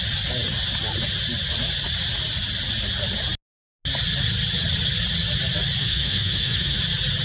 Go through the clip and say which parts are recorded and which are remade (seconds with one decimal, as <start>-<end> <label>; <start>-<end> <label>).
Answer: 0.0-5.8 recorded; 5.8-6.8 remade; 6.8-7.2 recorded